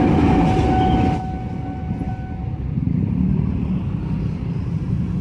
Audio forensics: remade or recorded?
recorded